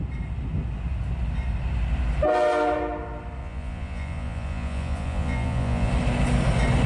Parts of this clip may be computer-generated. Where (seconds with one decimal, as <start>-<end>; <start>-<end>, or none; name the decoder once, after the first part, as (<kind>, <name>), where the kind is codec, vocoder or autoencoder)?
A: 3.4-5.9 (vocoder, Vocos)